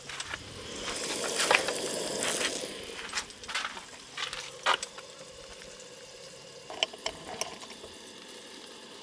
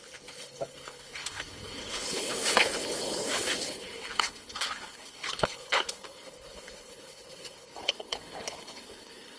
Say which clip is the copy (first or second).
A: second